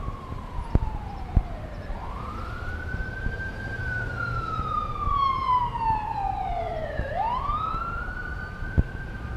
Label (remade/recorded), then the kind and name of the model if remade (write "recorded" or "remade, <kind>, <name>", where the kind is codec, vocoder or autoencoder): remade, vocoder, BigVGAN v2